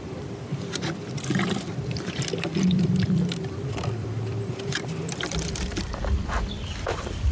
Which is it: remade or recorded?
remade